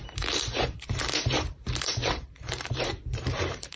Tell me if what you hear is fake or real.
fake